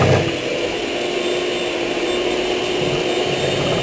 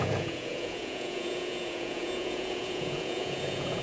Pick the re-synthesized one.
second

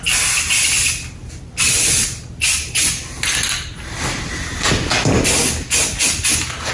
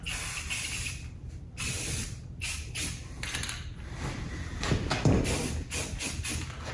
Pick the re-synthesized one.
second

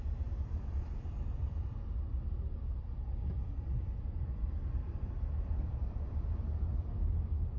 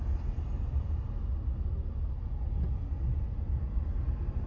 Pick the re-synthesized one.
first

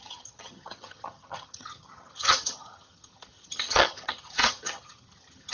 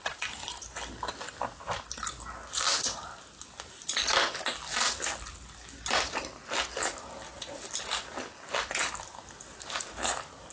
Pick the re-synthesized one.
first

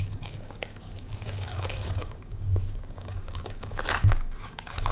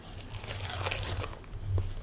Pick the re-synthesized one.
first